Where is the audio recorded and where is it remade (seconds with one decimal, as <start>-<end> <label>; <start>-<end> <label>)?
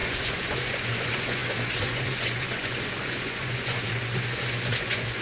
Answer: 0.0-5.2 remade